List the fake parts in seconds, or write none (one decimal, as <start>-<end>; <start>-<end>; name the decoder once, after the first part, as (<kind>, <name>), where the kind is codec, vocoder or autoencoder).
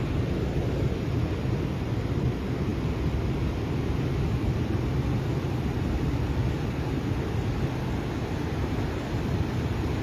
none